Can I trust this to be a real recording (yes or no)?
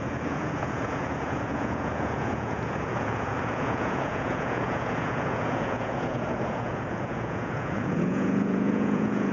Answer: no